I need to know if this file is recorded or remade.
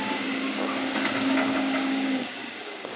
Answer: remade